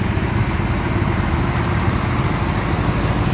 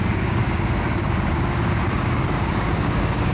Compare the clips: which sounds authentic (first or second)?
first